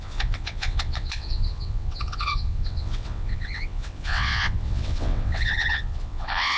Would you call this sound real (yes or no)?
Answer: no